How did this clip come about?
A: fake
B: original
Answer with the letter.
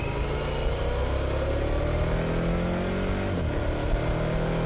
B